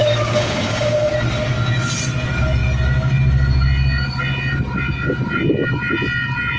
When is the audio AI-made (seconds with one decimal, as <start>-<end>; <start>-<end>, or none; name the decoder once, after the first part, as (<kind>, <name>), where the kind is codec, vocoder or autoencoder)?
0.0-1.1 (codec, DAC)